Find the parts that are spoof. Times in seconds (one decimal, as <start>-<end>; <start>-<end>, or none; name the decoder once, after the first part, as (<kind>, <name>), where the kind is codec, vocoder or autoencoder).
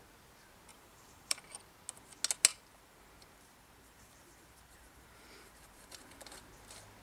0.7-1.4 (vocoder, BigVGAN v2); 2.5-6.1